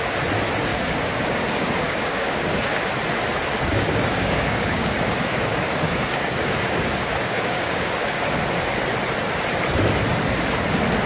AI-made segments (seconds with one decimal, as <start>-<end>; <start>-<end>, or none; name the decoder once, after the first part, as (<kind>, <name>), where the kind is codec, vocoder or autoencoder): 0.7-2.9 (codec, DAC); 3.5-8.4